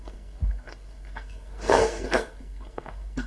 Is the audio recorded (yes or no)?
no